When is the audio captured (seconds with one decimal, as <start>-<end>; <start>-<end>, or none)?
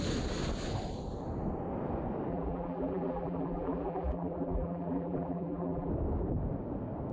0.0-2.3; 5.9-7.1